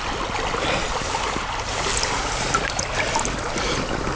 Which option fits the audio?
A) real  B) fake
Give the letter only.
A